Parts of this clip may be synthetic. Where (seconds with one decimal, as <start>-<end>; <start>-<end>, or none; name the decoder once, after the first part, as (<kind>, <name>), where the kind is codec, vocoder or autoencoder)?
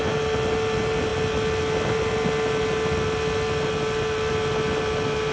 none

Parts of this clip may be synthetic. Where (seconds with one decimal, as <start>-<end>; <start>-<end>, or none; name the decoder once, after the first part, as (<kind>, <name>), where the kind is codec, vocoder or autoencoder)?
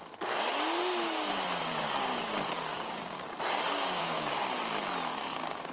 1.7-3.4 (codec, DAC); 4.0-4.6; 5.1-5.7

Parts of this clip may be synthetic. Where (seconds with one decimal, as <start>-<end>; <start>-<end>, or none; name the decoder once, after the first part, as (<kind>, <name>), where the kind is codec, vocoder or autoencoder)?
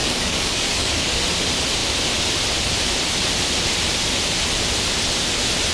0.0-1.2 (codec, DAC)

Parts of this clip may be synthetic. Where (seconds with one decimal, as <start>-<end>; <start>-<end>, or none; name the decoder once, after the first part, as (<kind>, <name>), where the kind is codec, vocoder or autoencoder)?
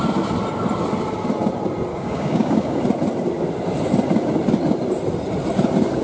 1.9-2.8 (codec, DAC)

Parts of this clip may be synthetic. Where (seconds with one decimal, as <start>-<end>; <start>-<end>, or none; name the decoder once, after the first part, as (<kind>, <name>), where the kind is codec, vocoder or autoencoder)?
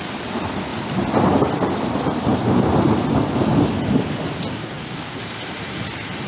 4.6-5.2 (codec, DAC)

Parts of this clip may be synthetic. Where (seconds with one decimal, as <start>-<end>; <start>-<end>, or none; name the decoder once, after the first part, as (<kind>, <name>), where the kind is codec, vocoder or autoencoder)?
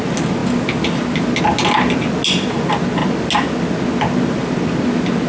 none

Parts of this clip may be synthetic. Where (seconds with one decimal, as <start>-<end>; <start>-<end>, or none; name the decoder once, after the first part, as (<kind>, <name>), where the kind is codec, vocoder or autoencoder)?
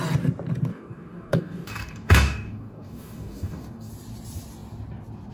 0.7-3.9 (codec, DAC)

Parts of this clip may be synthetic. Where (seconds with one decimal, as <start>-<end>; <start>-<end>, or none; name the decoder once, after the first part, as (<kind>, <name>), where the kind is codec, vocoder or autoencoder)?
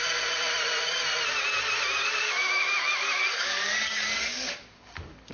2.0-5.3 (codec, DAC)